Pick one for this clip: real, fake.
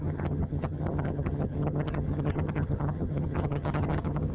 fake